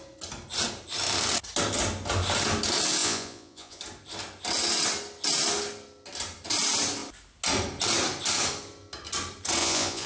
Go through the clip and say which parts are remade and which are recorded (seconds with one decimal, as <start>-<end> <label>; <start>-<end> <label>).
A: 0.0-3.0 recorded; 3.0-3.8 remade; 3.8-9.6 recorded; 9.6-10.1 remade